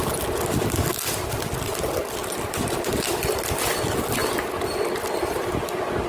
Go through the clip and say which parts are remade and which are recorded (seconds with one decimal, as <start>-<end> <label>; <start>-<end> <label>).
0.0-6.1 recorded